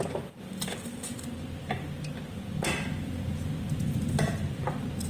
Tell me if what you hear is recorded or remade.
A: recorded